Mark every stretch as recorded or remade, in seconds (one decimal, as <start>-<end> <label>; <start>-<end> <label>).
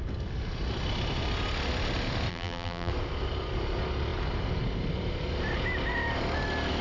0.0-2.3 recorded; 2.3-2.9 remade; 2.9-6.8 recorded